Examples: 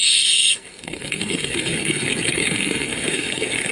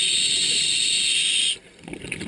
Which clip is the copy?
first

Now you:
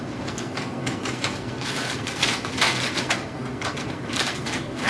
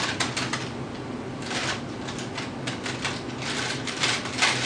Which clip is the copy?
first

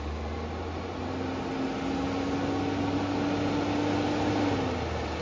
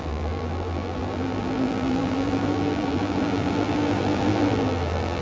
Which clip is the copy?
second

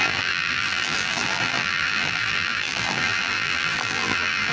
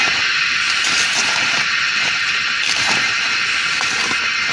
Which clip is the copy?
first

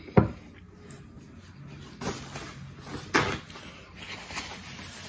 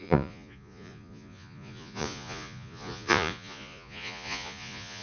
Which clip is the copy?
second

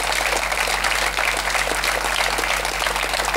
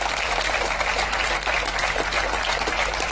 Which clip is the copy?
second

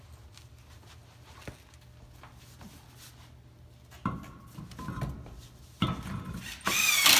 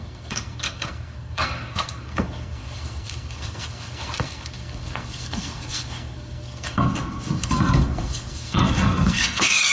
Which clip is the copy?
second